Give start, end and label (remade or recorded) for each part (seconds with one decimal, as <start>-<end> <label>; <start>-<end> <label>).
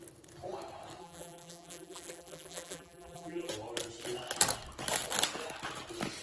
0.0-1.0 recorded; 1.0-3.5 remade; 3.5-6.2 recorded